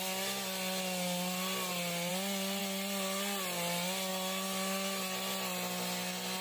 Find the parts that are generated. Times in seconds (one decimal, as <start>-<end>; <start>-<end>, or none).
none